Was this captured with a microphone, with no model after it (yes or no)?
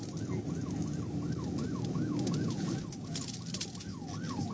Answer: yes